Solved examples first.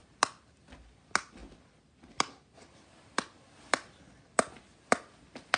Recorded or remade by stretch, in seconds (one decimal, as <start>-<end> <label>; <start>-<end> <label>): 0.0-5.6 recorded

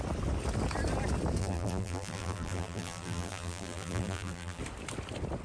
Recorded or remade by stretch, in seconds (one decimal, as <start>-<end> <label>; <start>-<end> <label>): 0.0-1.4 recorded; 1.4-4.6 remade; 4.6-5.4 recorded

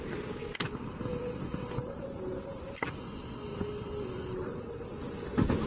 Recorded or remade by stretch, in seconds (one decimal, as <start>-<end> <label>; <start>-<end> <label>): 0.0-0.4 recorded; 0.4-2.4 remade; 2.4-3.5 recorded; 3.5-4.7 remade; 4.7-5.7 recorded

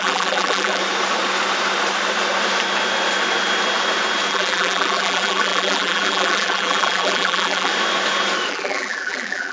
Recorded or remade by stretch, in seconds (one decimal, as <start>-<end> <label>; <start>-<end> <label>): 0.0-0.8 remade; 0.8-4.3 recorded; 4.3-7.7 remade; 7.7-8.5 recorded; 8.5-9.5 remade

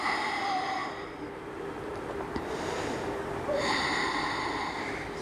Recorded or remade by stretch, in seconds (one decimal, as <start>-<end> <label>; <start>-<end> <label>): 0.0-0.8 recorded; 0.8-3.7 remade; 3.7-5.2 recorded